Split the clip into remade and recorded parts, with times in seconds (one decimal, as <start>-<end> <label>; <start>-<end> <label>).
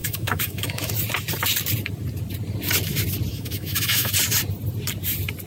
0.0-0.9 remade; 0.9-3.3 recorded; 3.3-4.1 remade; 4.1-5.5 recorded